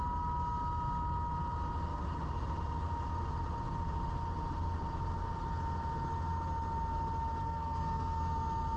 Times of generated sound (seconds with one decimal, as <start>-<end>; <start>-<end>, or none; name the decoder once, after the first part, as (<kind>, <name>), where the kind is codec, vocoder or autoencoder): 7.4-8.2 (codec, SNAC)